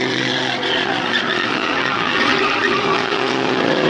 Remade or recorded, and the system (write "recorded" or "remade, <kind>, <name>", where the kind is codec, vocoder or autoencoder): remade, vocoder, Vocos